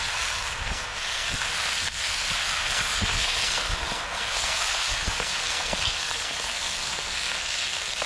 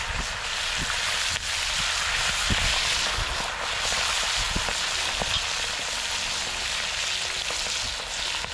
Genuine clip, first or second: second